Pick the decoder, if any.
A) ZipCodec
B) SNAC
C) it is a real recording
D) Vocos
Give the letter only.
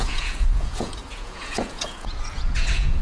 D